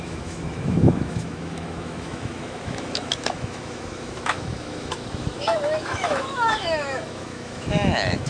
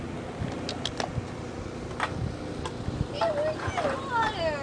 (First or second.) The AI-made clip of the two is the first